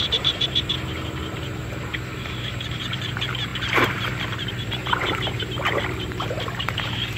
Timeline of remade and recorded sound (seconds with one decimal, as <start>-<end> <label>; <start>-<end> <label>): 0.0-0.7 remade; 0.7-1.3 recorded; 1.3-7.2 remade